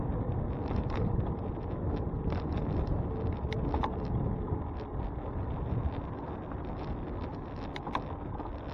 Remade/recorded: recorded